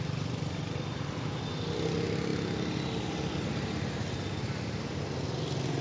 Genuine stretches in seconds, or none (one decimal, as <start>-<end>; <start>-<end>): 0.0-5.8